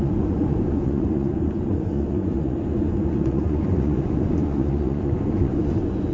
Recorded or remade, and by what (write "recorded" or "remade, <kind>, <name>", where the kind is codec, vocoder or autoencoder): remade, vocoder, Vocos